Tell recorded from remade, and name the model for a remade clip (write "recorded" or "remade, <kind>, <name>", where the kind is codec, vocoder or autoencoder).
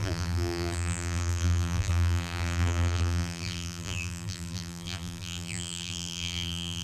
remade, vocoder, BigVGAN v2